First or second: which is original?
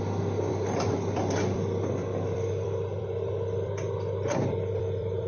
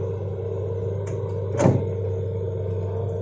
second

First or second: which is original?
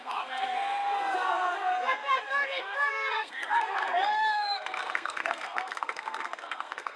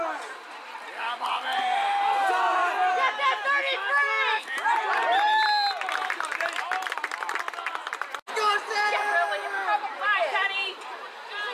second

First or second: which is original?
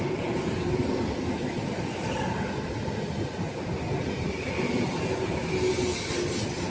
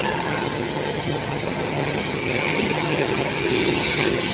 first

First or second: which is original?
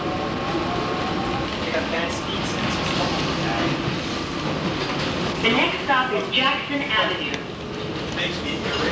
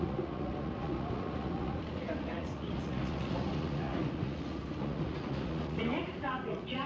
first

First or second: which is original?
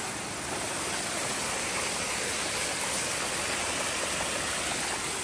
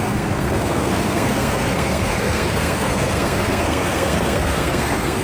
first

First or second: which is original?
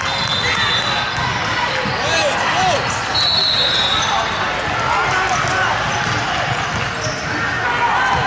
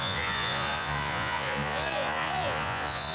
first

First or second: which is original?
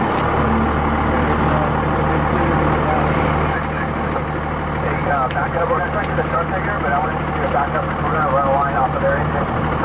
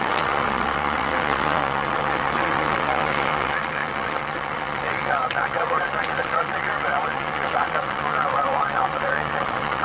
first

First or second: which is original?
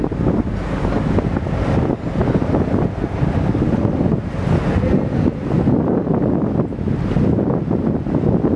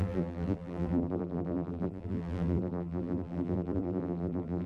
first